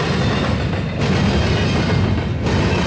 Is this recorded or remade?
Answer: recorded